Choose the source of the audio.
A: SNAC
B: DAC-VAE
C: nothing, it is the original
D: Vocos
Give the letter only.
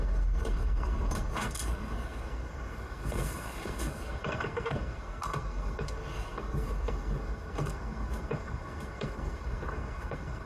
A